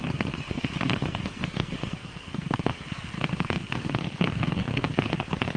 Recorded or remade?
remade